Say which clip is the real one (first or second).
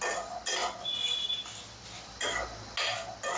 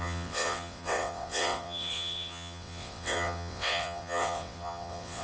first